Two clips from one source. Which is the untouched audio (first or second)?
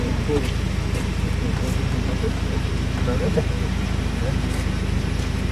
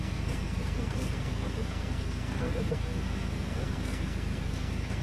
first